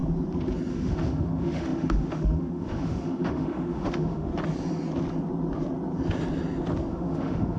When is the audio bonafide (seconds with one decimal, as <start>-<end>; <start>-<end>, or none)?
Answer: 0.0-0.7; 4.3-6.9